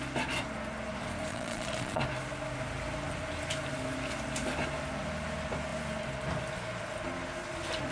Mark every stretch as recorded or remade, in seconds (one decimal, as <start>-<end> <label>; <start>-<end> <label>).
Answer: 0.0-1.3 recorded; 1.3-2.0 remade; 2.0-7.9 recorded